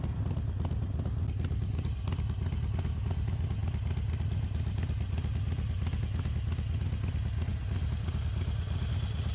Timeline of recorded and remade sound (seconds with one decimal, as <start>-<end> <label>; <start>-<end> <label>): 0.0-9.3 recorded